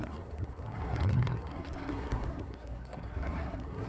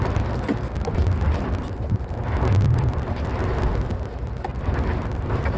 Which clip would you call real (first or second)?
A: second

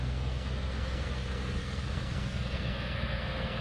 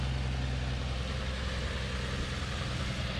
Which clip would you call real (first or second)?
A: second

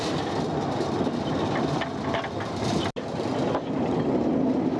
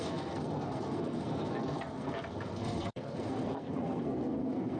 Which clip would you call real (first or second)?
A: first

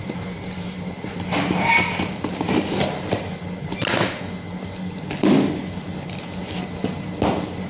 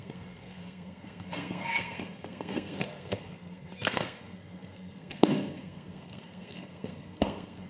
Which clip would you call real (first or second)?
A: first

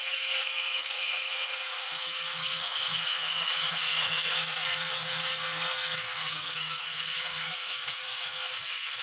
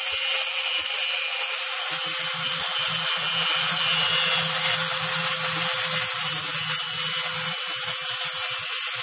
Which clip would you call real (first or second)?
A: second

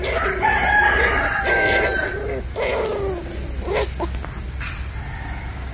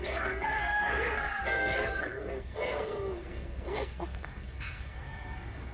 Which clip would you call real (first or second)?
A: first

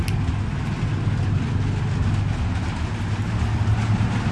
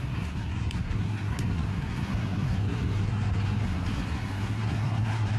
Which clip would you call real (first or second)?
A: first